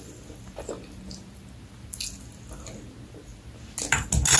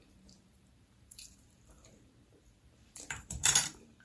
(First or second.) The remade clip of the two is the second